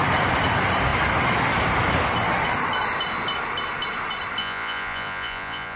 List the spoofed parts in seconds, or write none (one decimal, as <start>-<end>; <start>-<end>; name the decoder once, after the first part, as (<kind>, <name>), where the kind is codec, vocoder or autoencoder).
4.4-5.8 (vocoder, Vocos)